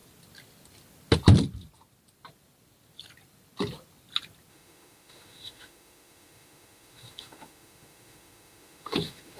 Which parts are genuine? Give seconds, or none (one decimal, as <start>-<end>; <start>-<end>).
0.0-4.5